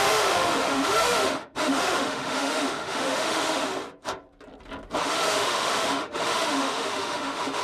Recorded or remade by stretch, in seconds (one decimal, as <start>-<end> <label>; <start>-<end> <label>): 0.0-3.7 remade; 3.7-5.0 recorded; 5.0-7.6 remade

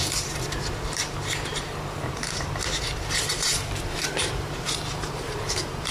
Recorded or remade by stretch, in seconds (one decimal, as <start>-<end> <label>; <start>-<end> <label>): 0.0-3.5 remade; 3.5-4.2 recorded; 4.2-5.9 remade